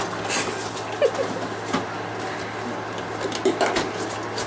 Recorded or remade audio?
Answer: recorded